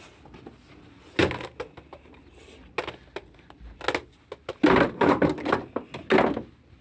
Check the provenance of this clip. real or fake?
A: real